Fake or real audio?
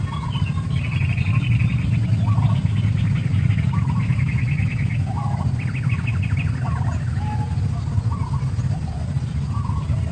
real